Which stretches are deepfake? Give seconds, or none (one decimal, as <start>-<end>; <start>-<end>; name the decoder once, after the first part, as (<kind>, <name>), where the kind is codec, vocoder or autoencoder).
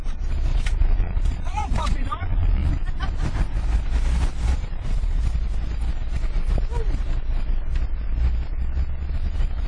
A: 0.5-2.7 (vocoder, Vocos); 4.5-5.2